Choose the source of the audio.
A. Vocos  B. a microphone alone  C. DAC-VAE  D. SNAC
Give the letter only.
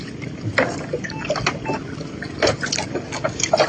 B